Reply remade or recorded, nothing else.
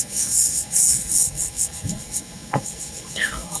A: remade